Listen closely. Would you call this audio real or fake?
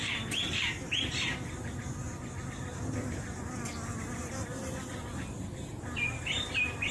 real